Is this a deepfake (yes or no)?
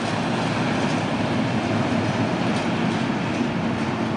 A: no